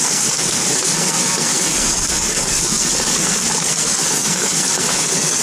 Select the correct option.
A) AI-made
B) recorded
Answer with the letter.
A